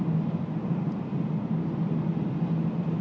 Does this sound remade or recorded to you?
recorded